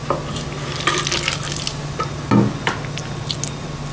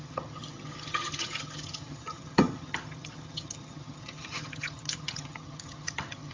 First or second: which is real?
first